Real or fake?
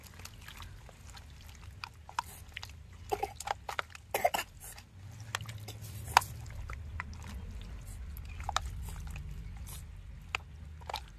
real